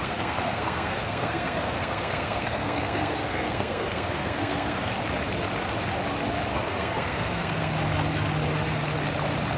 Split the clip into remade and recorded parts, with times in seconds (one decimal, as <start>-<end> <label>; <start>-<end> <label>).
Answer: 0.0-4.9 remade; 4.9-6.5 recorded; 6.5-7.7 remade; 7.7-9.6 recorded